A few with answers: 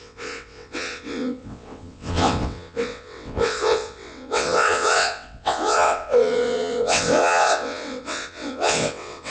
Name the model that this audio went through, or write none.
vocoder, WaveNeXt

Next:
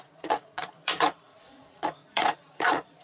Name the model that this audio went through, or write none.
vocoder, Vocos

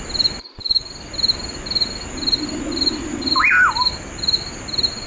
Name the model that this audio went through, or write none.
none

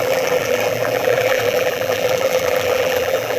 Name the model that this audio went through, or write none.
vocoder, BigVGAN v2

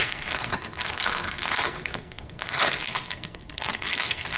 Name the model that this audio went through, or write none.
codec, SNAC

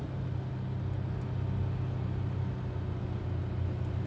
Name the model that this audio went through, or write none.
none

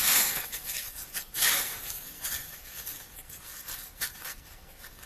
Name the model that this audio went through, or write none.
codec, SNAC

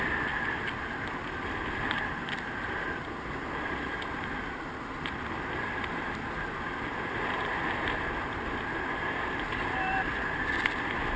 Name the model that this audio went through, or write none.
none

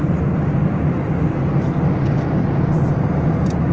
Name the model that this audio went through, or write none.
none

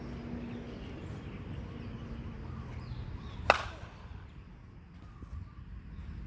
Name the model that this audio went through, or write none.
none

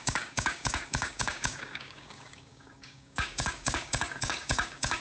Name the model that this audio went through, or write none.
codec, DAC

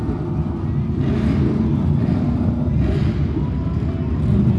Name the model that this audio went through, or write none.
none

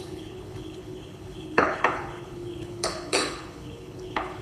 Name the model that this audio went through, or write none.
codec, HILCodec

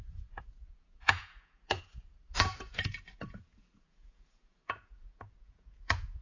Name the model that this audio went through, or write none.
vocoder, Vocos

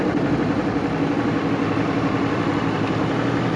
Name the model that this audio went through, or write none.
none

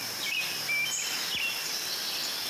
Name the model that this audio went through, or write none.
none